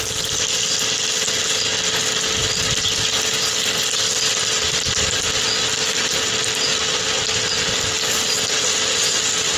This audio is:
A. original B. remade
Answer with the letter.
A